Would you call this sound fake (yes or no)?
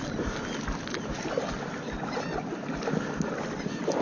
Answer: no